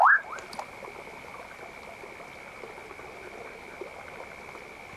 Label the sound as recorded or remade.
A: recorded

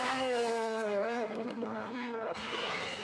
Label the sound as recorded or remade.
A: remade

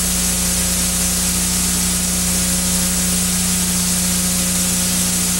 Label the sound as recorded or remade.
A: recorded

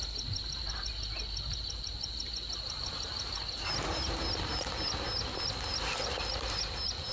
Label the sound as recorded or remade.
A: recorded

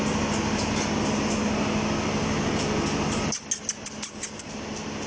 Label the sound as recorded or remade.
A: recorded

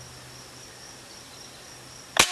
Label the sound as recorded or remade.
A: recorded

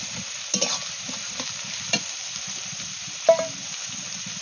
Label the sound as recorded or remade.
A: recorded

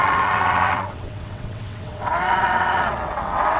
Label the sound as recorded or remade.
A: remade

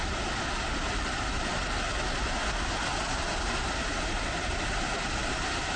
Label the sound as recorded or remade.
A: recorded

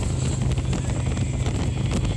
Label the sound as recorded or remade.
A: recorded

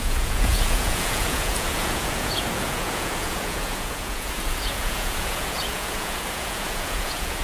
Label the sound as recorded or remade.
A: remade